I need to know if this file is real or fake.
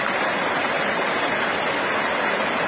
real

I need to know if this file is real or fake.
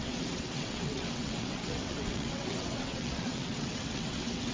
fake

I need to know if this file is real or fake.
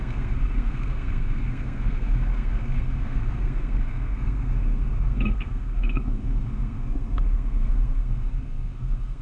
fake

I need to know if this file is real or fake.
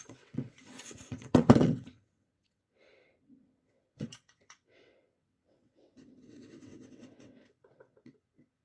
fake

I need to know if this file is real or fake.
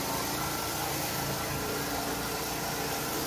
real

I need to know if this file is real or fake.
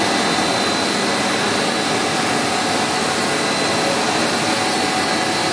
real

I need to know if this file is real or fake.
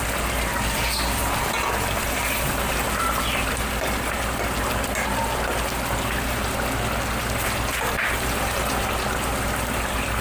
real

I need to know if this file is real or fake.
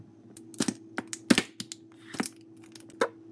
real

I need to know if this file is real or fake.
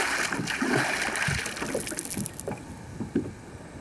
real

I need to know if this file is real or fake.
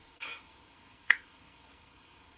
fake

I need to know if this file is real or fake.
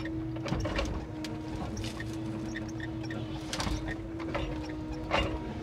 real